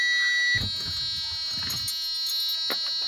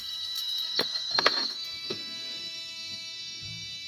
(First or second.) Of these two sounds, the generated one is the second